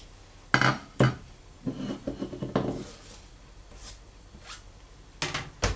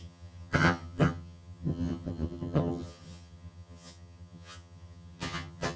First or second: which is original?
first